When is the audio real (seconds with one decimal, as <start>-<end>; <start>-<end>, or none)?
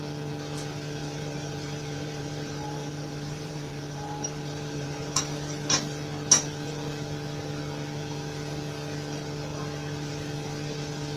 0.0-1.0; 5.2-11.2